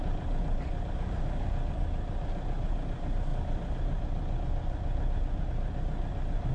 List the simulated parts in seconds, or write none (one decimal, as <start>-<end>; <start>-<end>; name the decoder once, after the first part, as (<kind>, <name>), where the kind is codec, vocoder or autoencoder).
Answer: none